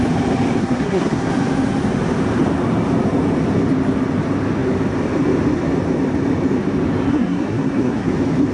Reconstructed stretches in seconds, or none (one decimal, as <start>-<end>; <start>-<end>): 0.6-1.3; 7.1-8.1